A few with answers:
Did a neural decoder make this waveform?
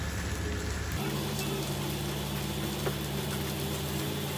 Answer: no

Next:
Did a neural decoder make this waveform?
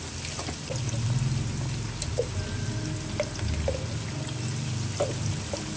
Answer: no